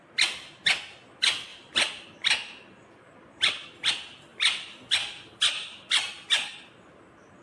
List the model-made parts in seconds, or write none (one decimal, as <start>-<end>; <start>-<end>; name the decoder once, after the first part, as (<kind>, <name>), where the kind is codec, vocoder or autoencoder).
1.5-3.9 (vocoder, BigVGAN v2); 4.3-6.0